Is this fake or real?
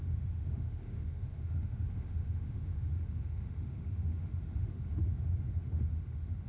fake